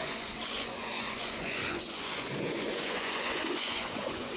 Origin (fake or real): fake